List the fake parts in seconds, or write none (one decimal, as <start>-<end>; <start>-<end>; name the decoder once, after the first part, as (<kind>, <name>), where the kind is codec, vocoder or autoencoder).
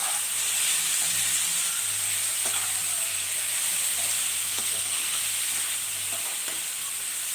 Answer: 3.0-3.5 (codec, SNAC); 4.4-5.2